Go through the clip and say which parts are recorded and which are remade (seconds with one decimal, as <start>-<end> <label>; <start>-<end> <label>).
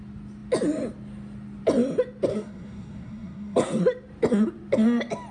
0.0-2.3 recorded; 2.3-3.8 remade; 3.8-5.3 recorded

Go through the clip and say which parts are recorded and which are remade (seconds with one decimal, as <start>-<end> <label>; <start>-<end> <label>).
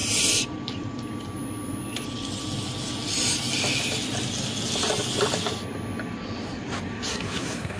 0.0-7.1 recorded; 7.1-7.8 remade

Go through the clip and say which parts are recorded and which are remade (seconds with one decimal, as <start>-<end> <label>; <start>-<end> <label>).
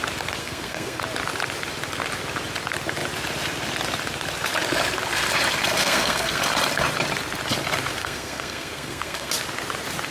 0.0-0.4 recorded; 0.4-1.0 remade; 1.0-5.8 recorded; 5.8-6.4 remade; 6.4-8.0 recorded; 8.0-9.3 remade; 9.3-10.1 recorded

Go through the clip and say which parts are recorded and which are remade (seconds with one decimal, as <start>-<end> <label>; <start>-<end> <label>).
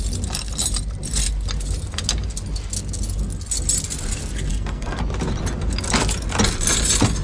0.0-4.5 recorded; 4.5-5.0 remade; 5.0-7.2 recorded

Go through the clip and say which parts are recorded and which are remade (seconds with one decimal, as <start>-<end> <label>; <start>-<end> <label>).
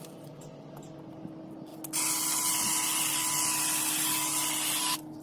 0.0-5.2 recorded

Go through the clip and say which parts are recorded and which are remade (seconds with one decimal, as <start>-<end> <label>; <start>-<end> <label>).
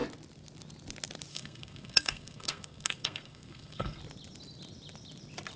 0.0-1.3 recorded; 1.3-4.0 remade; 4.0-5.6 recorded